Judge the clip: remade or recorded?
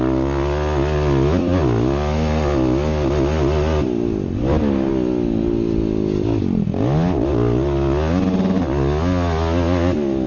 recorded